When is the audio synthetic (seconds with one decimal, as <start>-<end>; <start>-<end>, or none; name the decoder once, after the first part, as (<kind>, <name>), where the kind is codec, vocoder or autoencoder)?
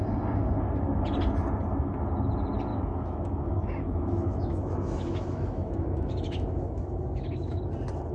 2.7-7.6 (autoencoder, DAC-VAE)